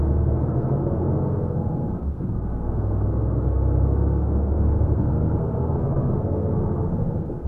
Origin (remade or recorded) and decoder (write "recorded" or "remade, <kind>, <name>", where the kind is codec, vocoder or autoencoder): remade, codec, SNAC